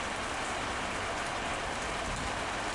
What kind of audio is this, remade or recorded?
recorded